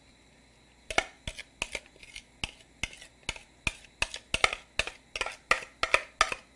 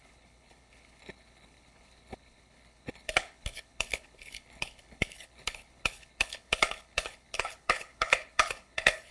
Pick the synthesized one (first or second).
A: second